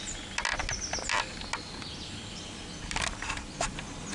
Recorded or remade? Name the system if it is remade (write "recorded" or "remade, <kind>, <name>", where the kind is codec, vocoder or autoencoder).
recorded